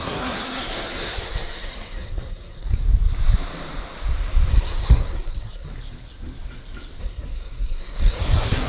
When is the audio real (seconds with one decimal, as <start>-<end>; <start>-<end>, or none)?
2.8-4.5; 5.7-7.0